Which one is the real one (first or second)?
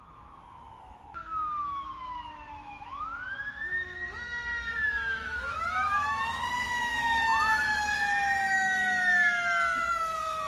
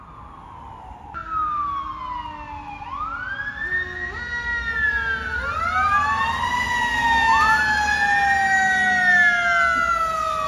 second